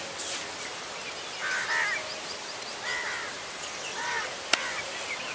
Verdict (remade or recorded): recorded